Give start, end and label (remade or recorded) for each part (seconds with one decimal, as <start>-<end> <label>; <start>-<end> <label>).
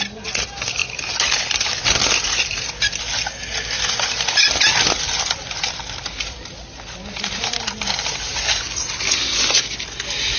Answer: 0.0-10.4 recorded